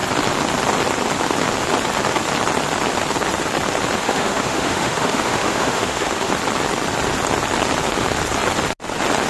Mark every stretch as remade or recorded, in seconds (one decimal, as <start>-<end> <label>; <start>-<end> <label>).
0.0-4.0 recorded; 4.0-6.3 remade; 6.3-9.3 recorded